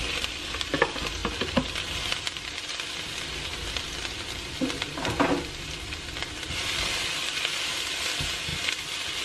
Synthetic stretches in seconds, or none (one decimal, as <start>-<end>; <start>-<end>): none

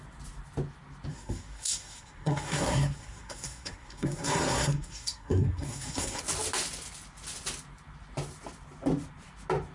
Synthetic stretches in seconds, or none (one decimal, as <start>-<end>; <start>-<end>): 1.1-6.2

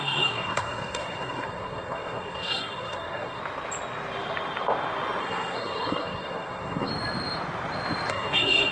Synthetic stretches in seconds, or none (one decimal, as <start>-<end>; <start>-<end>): 0.0-3.4; 5.2-6.9; 8.1-8.7

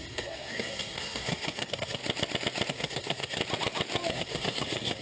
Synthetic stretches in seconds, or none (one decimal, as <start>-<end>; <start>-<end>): 0.0-2.0; 2.7-3.4; 4.1-5.0